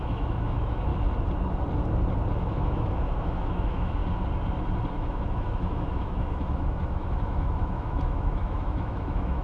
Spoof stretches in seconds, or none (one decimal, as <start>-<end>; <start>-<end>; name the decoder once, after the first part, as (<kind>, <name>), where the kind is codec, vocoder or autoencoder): 0.0-0.9 (autoencoder, DAC-VAE); 2.5-4.0; 4.9-9.4